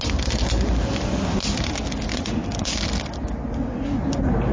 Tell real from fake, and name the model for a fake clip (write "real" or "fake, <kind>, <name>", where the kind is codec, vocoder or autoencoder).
real